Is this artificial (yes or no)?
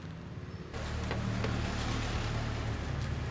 no